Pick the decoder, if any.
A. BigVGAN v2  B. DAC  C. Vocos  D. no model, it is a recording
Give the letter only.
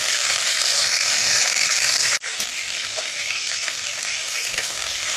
B